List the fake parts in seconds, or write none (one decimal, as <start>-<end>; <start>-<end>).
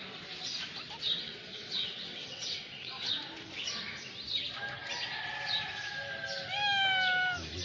1.2-3.1